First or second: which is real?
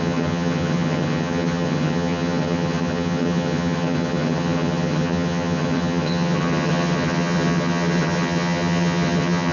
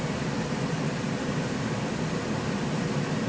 second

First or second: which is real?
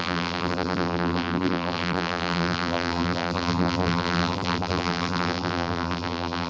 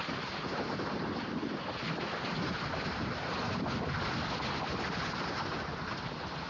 second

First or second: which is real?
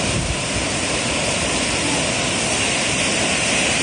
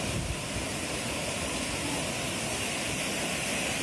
first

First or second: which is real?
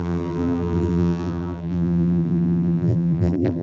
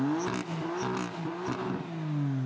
second